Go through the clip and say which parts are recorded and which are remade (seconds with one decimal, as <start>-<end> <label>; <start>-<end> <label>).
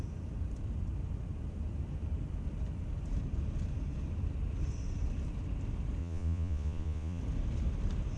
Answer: 0.0-6.0 recorded; 6.0-7.2 remade; 7.2-8.2 recorded